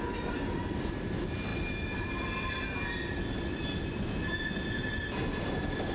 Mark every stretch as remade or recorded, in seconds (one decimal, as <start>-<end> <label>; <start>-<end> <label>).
0.0-5.9 recorded